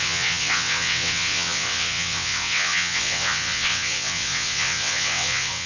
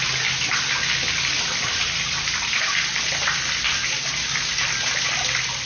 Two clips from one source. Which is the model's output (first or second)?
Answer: first